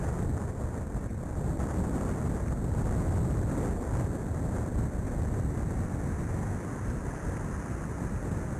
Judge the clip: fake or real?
real